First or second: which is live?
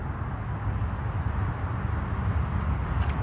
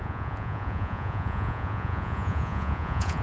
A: first